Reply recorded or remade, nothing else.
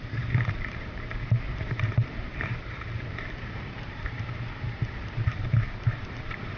remade